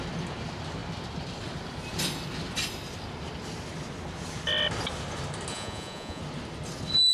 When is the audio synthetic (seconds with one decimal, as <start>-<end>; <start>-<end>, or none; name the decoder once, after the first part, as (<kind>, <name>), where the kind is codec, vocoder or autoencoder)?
5.5-6.2 (vocoder, Vocos)